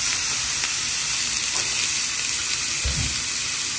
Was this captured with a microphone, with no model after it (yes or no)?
yes